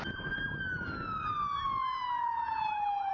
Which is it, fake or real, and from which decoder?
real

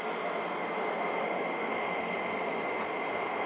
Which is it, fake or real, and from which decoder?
real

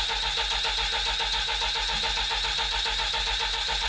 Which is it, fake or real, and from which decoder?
real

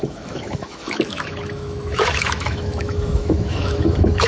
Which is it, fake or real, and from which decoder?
fake, autoencoder, DAC-VAE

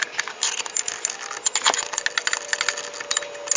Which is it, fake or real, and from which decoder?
real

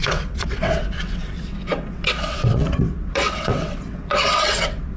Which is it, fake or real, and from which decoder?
fake, vocoder, WaveNeXt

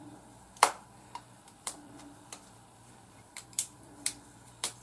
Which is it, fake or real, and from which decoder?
fake, vocoder, BigVGAN v2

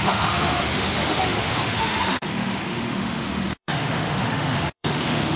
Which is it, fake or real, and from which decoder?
fake, autoencoder, DAC-VAE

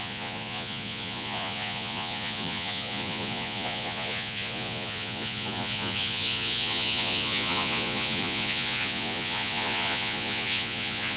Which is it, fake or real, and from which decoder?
fake, vocoder, Vocos